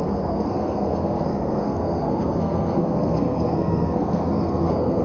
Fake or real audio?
fake